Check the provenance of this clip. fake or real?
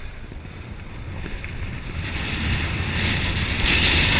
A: real